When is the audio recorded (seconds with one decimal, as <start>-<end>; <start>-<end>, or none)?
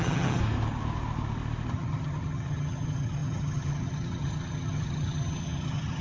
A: 0.4-1.7